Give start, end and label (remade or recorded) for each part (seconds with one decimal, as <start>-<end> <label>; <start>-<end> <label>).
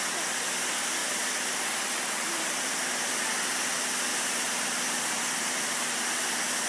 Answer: 0.0-1.0 recorded; 1.0-3.1 remade; 3.1-4.1 recorded; 4.1-5.9 remade; 5.9-6.7 recorded